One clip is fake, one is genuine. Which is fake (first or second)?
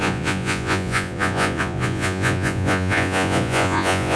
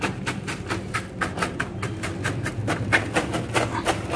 first